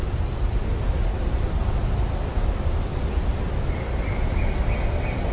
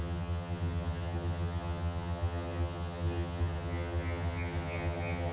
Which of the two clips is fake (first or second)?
second